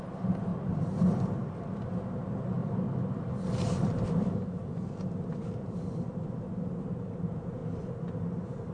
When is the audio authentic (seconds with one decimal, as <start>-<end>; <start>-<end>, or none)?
0.0-0.5; 2.0-2.6; 6.8-7.6